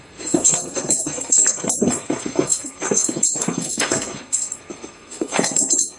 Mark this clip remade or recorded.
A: remade